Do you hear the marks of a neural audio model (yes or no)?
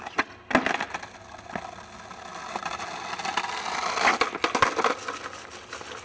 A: no